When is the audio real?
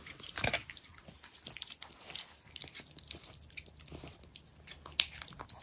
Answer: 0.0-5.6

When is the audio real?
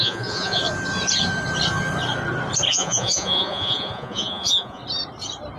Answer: 0.6-2.7; 4.8-5.6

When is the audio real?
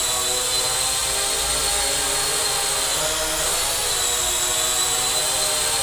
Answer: 0.0-5.8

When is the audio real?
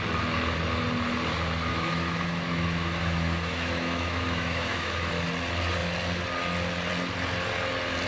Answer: 0.0-1.7; 5.1-8.1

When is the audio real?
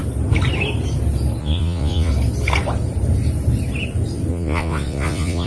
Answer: 0.0-1.4; 2.1-4.3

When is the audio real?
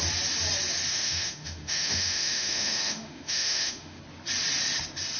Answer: 0.0-0.9; 4.0-5.2